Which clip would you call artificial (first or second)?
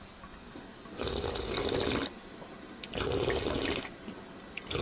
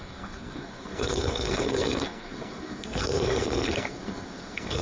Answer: second